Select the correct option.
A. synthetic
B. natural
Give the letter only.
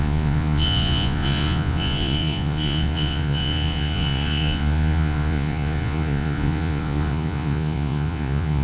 A